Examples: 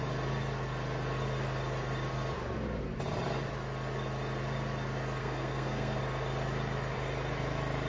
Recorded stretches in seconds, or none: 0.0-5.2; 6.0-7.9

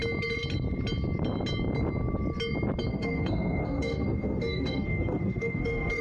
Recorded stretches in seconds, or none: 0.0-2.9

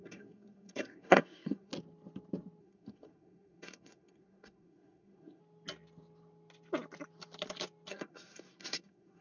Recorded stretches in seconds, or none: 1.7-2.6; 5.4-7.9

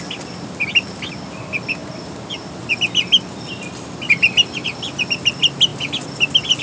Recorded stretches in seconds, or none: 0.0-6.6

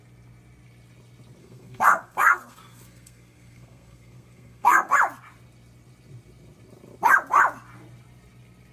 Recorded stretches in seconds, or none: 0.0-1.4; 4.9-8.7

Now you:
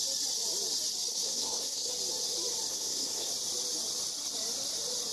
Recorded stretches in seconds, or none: 0.0-1.1; 1.9-2.7; 3.3-5.1

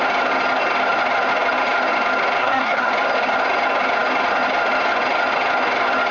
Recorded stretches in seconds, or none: 0.0-2.4; 2.9-6.1

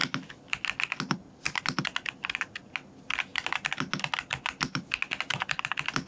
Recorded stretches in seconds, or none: 0.0-6.1